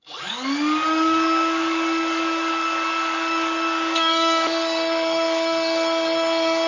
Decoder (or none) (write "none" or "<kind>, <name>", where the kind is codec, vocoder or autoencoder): codec, DAC